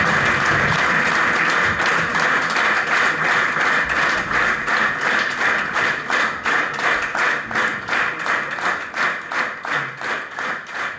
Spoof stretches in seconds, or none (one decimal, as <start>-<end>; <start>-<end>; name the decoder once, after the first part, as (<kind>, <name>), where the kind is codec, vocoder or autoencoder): none